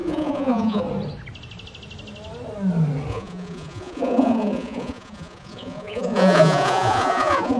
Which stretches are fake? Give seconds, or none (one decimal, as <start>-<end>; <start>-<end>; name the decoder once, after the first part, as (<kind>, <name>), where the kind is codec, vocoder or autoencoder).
0.0-0.8 (vocoder, Vocos); 3.1-7.6